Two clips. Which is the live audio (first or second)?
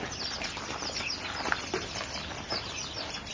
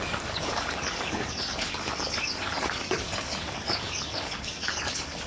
first